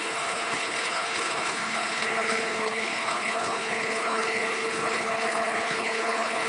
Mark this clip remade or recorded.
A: remade